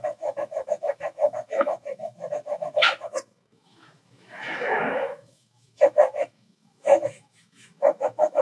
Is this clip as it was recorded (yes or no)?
no